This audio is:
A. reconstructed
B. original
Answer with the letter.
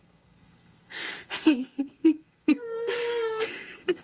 A